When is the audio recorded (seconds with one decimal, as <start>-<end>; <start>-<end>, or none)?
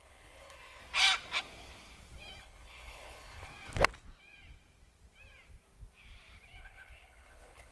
0.8-2.4; 3.5-6.6